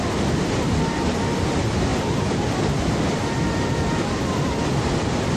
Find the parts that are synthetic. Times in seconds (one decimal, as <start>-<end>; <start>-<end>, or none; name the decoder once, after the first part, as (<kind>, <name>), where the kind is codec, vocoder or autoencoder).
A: 1.9-2.9 (vocoder, BigVGAN v2)